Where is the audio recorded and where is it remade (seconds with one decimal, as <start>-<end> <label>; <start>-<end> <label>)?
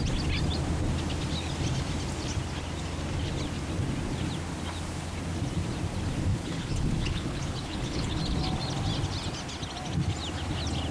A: 0.0-6.3 recorded; 6.3-8.2 remade; 8.2-10.9 recorded